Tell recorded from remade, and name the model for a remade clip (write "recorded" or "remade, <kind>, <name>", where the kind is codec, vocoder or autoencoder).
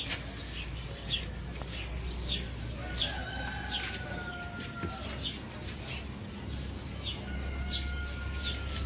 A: recorded